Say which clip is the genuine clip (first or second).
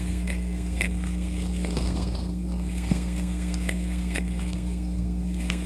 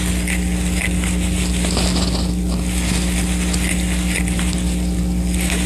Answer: second